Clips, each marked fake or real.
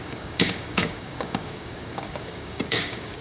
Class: fake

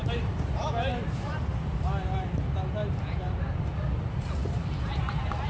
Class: real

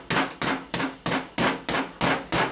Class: real